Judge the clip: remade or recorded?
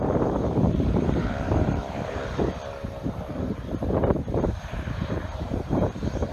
remade